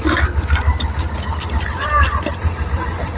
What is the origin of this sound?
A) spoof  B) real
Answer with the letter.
B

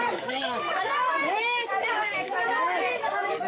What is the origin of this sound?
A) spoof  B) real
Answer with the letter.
A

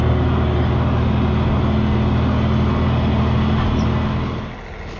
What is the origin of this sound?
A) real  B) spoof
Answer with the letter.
A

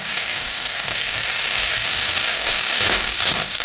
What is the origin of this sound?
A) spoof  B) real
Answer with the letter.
A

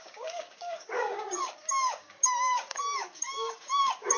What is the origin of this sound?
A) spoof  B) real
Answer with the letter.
A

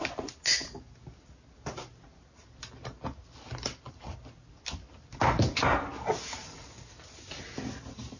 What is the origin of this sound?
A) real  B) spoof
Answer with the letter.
A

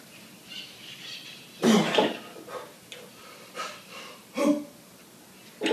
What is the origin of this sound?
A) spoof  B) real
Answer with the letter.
B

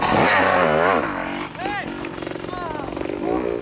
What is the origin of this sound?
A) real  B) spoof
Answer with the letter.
A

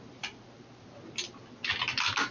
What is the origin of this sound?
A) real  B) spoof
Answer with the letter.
A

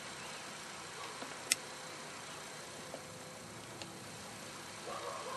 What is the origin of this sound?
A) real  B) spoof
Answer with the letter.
A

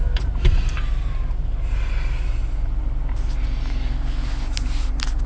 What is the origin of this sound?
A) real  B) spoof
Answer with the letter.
A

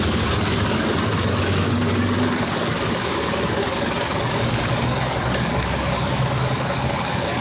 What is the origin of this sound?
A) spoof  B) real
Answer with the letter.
A